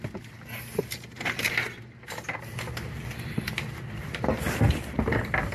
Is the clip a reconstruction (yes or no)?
no